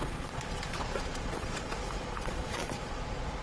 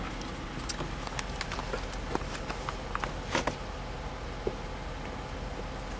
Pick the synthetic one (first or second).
first